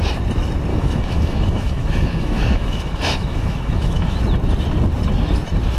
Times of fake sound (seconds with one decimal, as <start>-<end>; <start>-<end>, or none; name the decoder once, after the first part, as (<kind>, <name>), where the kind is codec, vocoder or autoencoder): 0.7-4.2 (autoencoder, DAC-VAE)